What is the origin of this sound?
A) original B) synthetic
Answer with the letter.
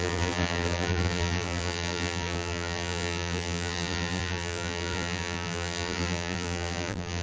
B